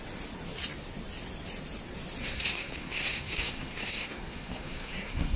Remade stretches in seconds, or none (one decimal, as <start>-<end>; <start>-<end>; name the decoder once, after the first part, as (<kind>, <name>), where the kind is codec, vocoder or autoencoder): 2.2-5.4 (codec, SNAC)